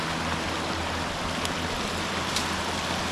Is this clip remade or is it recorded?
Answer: recorded